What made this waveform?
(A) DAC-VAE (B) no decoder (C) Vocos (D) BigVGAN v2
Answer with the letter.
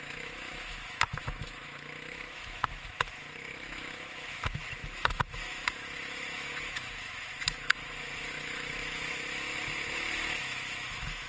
A